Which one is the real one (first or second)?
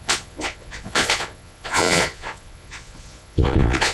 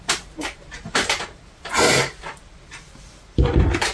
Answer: second